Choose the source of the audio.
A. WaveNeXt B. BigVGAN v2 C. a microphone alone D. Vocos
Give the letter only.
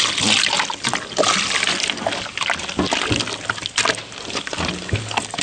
C